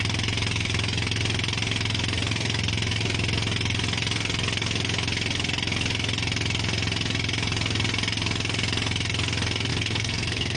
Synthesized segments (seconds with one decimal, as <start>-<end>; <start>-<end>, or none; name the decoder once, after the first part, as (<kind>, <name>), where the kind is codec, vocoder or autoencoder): 9.7-10.6 (codec, SNAC)